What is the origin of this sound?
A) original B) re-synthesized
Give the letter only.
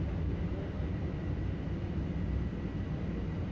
A